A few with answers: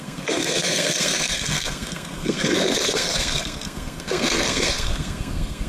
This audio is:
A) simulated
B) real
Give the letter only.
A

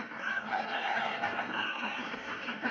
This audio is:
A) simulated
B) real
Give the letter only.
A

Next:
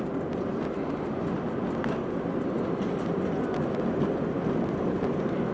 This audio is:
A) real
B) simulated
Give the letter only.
A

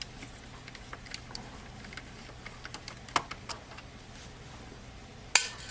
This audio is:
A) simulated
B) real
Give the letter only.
B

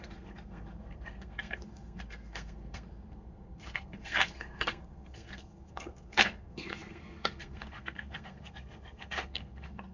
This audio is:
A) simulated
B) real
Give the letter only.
A